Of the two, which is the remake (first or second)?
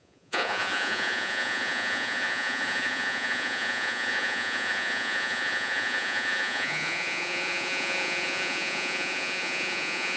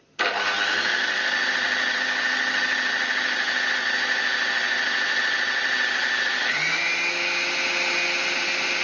first